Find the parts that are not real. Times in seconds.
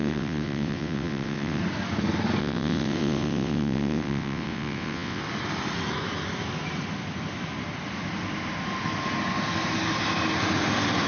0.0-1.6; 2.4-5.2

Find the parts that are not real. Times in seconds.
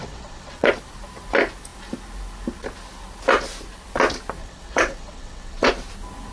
0.0-0.7; 4.4-5.7